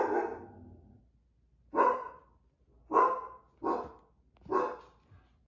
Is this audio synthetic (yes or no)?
no